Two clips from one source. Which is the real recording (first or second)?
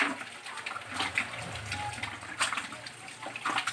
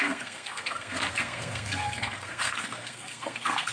first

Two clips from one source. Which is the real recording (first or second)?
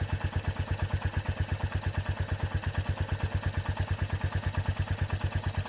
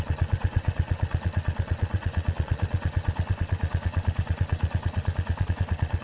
first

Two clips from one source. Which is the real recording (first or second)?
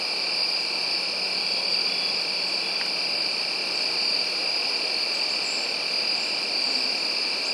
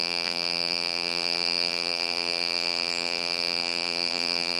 first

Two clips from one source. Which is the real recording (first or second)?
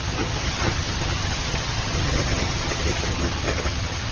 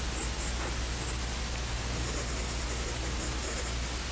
second